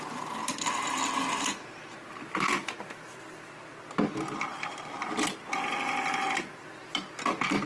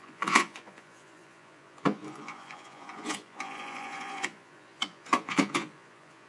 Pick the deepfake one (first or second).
second